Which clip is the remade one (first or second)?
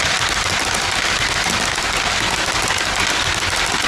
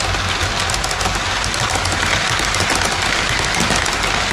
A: first